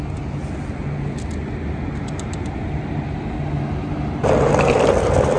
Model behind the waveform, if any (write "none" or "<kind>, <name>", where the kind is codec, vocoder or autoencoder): none